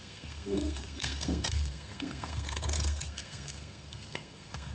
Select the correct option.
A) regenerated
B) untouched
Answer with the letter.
A